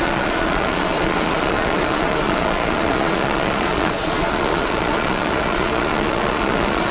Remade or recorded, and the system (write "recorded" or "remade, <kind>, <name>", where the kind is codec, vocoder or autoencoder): remade, vocoder, Vocos